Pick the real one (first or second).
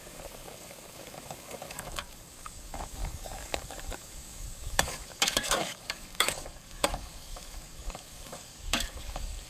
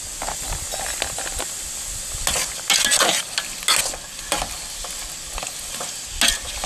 second